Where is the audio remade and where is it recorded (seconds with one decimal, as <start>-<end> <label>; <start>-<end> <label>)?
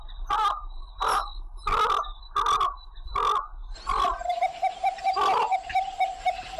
0.0-6.6 recorded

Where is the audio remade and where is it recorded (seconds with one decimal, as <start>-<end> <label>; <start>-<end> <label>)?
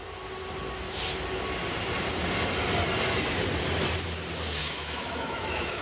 0.0-4.6 recorded; 4.6-5.8 remade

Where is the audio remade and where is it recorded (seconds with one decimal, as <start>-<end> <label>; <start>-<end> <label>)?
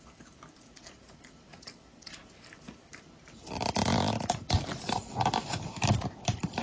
0.0-6.6 recorded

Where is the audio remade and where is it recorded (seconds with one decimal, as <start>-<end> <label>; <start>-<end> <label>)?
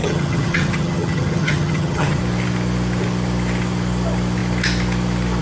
0.0-2.2 remade; 2.2-5.4 recorded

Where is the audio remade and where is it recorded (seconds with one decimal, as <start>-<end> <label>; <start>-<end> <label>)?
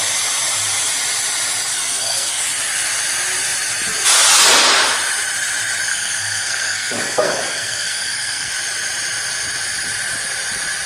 0.0-1.7 recorded; 1.7-2.4 remade; 2.4-5.9 recorded; 5.9-8.5 remade; 8.5-10.9 recorded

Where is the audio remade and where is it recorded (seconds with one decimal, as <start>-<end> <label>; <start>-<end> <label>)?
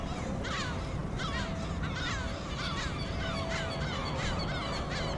0.0-5.2 recorded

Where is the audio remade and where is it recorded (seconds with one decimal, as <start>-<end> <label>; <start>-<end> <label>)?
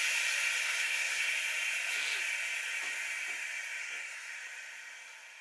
0.0-0.6 recorded; 0.6-1.3 remade; 1.3-3.8 recorded; 3.8-4.3 remade; 4.3-5.4 recorded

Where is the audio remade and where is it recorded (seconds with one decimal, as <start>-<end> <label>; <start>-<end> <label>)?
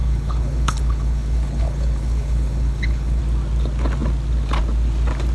0.0-3.2 remade; 3.2-5.3 recorded